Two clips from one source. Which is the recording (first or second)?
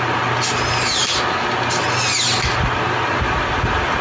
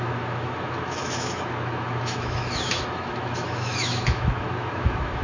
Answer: first